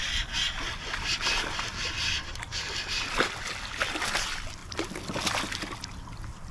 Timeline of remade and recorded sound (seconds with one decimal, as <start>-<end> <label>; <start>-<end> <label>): 0.0-6.5 recorded